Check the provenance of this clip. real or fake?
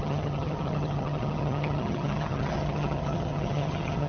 fake